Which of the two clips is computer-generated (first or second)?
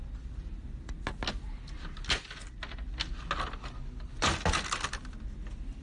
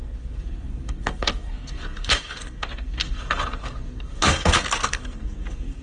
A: second